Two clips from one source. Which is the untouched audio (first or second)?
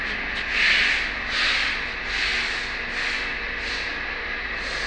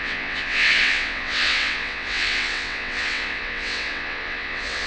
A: first